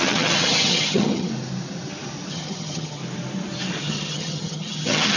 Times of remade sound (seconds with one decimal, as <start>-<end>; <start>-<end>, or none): 0.0-1.3; 2.3-3.0; 3.8-5.2